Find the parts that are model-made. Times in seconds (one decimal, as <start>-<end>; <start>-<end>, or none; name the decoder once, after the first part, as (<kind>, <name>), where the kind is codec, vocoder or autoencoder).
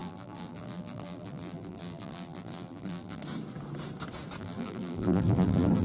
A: 0.0-3.2 (vocoder, BigVGAN v2); 4.4-5.8